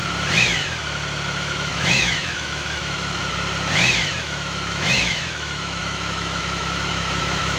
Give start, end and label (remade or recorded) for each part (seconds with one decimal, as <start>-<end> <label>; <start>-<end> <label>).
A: 0.0-1.4 recorded; 1.4-3.2 remade; 3.2-4.1 recorded; 4.1-7.6 remade

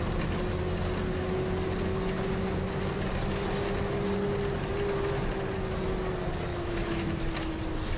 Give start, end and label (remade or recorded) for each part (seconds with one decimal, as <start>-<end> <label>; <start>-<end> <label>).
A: 0.0-6.5 recorded; 6.5-7.3 remade; 7.3-8.0 recorded

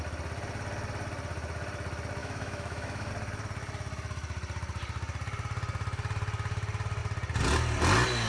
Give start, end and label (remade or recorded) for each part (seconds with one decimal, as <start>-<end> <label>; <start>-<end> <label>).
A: 0.0-2.2 recorded; 2.2-3.1 remade; 3.1-8.3 recorded

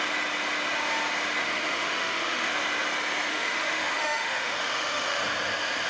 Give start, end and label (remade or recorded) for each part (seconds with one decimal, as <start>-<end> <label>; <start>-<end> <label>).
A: 0.0-1.4 recorded; 1.4-2.5 remade; 2.5-3.3 recorded; 3.3-5.2 remade; 5.2-5.9 recorded

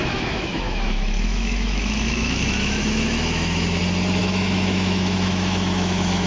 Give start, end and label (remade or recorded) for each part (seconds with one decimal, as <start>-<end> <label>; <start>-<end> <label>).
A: 0.0-3.8 remade; 3.8-4.2 recorded; 4.2-6.3 remade